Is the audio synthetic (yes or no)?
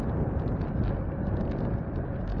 no